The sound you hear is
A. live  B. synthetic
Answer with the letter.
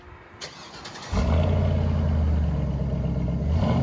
A